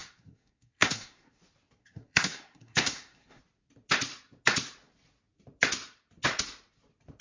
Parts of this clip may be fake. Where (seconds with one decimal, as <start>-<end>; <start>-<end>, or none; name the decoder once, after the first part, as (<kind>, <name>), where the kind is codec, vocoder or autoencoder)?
0.0-1.4 (codec, SNAC); 1.8-3.4

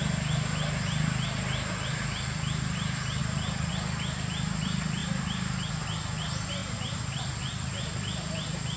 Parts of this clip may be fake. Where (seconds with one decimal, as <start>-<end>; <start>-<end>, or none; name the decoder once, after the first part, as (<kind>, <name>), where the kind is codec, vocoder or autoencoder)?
3.2-3.7 (vocoder, BigVGAN v2); 5.0-5.7; 6.6-7.2

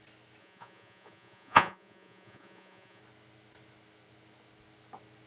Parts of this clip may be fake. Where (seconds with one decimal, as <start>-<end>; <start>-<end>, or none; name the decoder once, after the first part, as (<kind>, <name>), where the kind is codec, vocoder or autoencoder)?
0.4-3.0 (vocoder, Vocos)

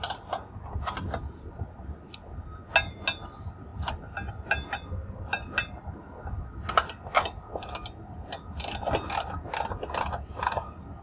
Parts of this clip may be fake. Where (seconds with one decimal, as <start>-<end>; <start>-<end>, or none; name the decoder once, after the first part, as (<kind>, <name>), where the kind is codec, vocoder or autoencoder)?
none

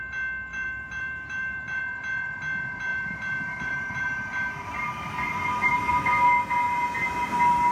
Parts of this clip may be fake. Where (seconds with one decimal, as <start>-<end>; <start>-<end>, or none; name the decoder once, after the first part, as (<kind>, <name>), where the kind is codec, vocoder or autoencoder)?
0.5-1.8 (vocoder, BigVGAN v2); 2.9-3.9

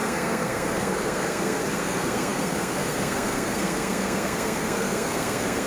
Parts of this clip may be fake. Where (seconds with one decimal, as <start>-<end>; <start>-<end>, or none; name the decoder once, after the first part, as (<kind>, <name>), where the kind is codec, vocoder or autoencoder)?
0.0-5.7 (codec, SNAC)

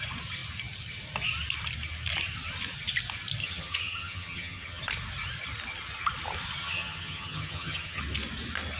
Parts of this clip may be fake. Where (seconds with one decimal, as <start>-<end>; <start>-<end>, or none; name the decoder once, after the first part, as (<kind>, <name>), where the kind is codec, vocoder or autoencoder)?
3.4-4.8 (vocoder, HiFi-GAN); 6.6-8.0